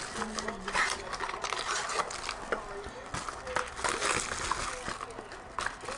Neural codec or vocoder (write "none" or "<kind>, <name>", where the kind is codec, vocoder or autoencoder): none